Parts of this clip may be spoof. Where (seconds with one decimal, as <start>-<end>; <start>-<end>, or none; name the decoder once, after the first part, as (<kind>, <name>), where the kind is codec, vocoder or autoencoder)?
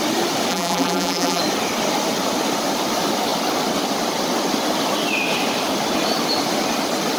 0.5-1.4 (vocoder, BigVGAN v2)